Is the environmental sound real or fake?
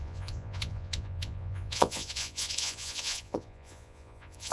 fake